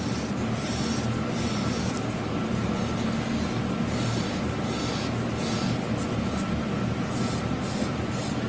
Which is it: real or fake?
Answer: real